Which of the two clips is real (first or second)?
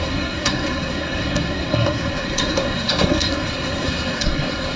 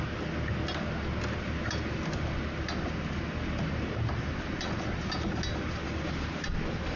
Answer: second